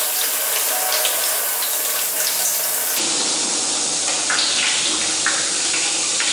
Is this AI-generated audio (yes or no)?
no